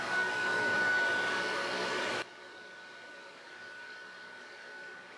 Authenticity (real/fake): fake